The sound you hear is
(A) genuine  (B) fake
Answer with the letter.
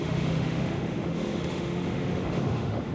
B